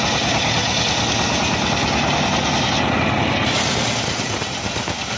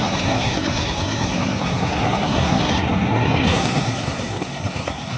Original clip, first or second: first